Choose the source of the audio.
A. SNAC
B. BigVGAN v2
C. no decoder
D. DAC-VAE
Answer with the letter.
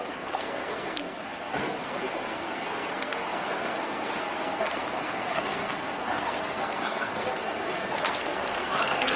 A